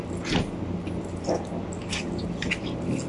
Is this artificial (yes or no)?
no